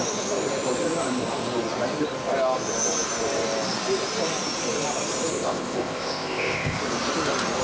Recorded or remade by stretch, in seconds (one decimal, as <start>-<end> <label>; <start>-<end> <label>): 0.0-5.3 recorded; 5.3-6.8 remade; 6.8-7.6 recorded